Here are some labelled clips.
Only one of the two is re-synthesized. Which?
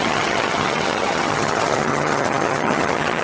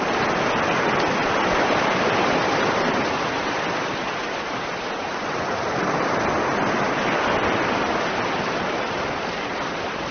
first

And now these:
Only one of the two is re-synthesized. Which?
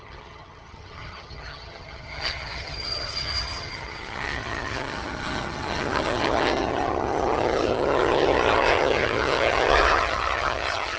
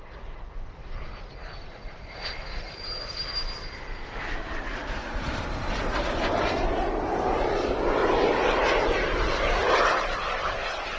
first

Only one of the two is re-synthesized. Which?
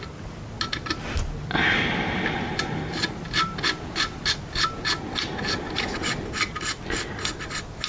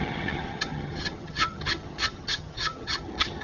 second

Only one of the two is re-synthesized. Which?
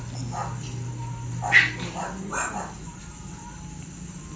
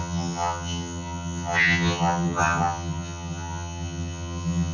second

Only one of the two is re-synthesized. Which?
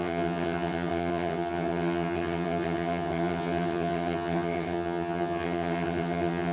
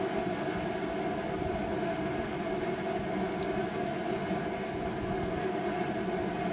first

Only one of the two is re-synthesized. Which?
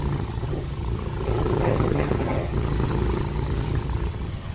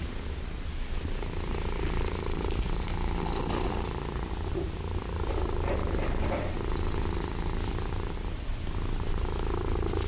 first